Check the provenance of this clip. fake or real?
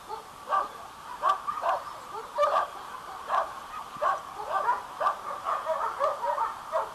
fake